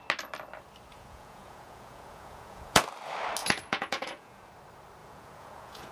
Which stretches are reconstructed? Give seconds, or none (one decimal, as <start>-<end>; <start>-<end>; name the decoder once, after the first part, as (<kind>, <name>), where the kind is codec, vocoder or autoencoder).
0.9-2.8 (vocoder, Vocos); 3.4-4.5; 5.0-5.9